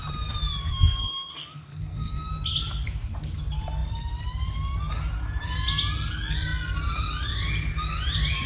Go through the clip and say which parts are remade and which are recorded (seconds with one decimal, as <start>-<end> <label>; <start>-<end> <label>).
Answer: 0.0-0.6 recorded; 0.6-2.3 remade; 2.3-8.5 recorded